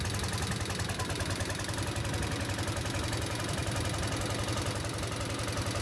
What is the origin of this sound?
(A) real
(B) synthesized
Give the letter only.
A